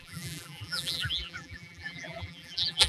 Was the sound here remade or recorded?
remade